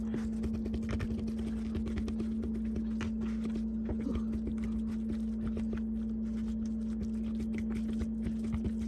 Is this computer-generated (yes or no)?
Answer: no